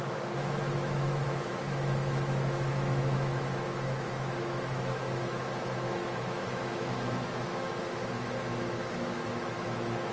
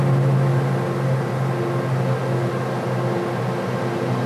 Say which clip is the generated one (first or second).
first